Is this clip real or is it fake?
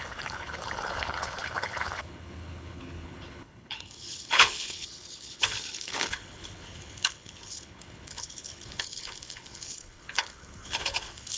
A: fake